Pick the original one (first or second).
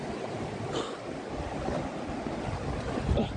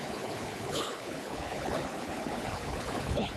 first